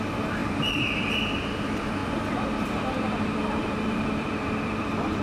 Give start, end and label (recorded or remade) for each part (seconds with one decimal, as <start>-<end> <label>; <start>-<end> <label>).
0.0-5.2 remade